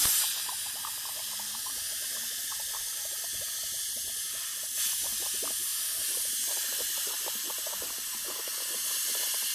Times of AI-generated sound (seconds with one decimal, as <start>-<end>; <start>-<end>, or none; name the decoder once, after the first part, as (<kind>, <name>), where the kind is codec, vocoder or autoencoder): none